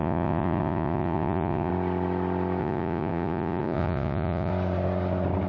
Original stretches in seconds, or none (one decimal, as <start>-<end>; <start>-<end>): 1.7-2.6; 4.5-5.5